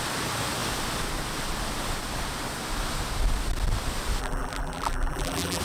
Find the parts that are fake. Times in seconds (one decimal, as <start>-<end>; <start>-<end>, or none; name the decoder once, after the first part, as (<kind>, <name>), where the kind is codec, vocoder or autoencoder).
4.2-5.6 (vocoder, BigVGAN v2)